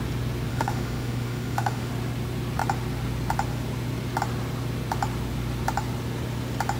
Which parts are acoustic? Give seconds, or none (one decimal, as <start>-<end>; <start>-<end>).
0.0-0.5; 1.9-6.8